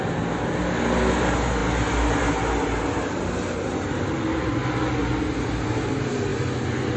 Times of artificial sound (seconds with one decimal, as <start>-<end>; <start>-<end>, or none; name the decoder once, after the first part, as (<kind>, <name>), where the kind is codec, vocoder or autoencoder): none